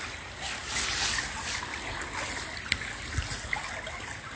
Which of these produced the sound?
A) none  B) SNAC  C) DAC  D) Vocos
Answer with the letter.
A